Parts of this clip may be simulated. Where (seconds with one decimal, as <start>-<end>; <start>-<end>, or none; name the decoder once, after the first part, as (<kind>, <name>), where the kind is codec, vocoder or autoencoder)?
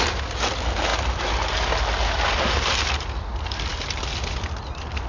none